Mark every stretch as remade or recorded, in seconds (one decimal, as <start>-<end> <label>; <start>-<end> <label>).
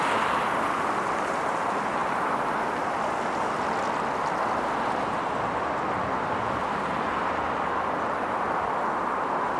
0.0-9.6 recorded